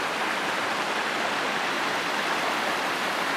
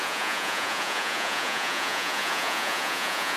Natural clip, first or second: first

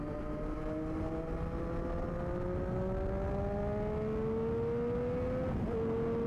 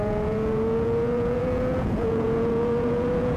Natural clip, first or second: first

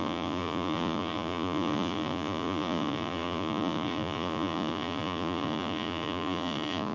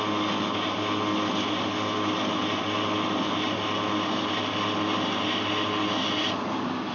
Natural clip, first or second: second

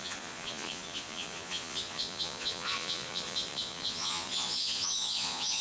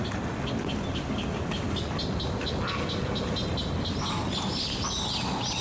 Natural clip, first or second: second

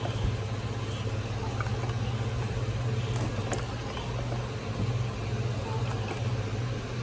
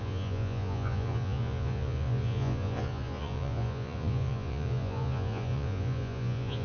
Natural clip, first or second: first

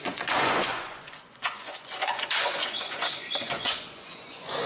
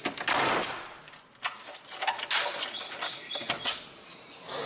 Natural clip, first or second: second